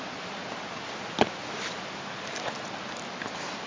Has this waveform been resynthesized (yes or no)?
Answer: no